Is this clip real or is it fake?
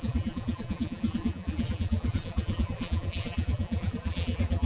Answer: fake